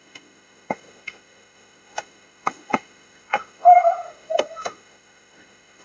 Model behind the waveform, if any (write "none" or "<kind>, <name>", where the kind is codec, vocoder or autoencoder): autoencoder, DAC-VAE